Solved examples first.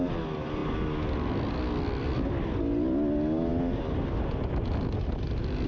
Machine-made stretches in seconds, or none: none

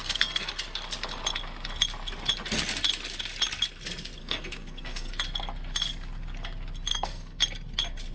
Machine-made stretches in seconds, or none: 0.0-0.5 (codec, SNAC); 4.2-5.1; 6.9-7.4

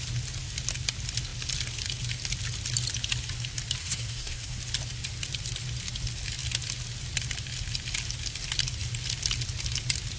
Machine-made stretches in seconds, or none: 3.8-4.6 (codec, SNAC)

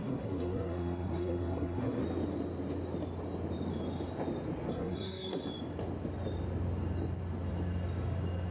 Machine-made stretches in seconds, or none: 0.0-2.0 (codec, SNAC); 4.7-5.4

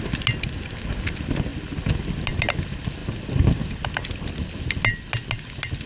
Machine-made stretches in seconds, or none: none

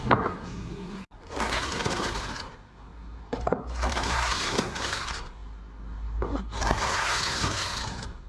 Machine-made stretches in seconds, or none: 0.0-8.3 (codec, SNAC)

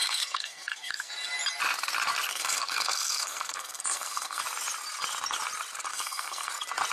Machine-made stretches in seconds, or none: 0.0-1.1 (codec, SNAC); 2.3-4.4; 5.9-6.5

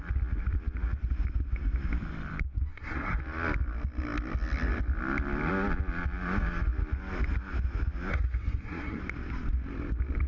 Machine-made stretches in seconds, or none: 2.7-3.2 (codec, SNAC); 8.1-9.0